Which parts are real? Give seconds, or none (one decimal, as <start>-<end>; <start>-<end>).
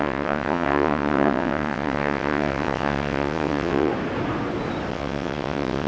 3.9-4.9